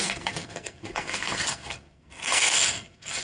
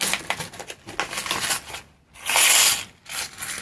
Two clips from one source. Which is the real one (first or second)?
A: second